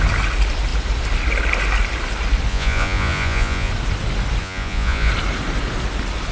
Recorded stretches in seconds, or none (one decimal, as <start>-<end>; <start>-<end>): 0.0-2.5; 3.7-4.4; 5.1-6.3

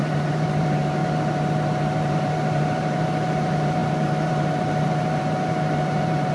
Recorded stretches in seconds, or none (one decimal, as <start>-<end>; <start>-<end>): none

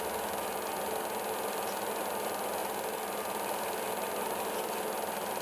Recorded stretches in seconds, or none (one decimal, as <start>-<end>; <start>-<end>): 0.0-5.4

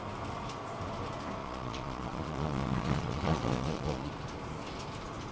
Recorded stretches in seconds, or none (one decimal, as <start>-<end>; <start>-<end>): 0.0-1.4; 4.1-5.3

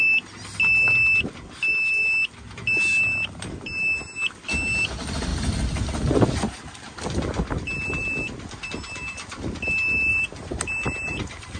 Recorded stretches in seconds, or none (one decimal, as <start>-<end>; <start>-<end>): 0.0-1.7; 3.5-10.1

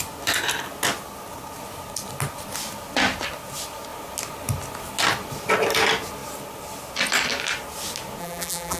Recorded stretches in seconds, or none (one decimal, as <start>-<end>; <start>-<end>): 0.0-8.2

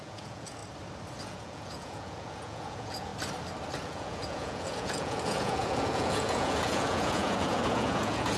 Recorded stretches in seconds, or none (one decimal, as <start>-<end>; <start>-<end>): 0.6-1.2; 3.1-3.8